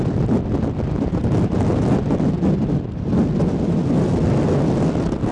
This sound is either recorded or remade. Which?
recorded